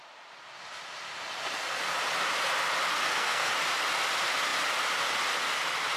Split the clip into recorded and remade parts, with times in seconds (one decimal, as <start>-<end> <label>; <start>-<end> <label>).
0.0-2.9 recorded; 2.9-3.5 remade; 3.5-6.0 recorded